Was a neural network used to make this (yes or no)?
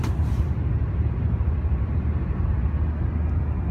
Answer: no